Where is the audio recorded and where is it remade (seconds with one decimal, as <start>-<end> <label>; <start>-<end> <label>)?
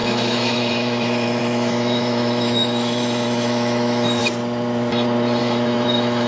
0.0-4.2 remade; 4.2-5.4 recorded; 5.4-6.3 remade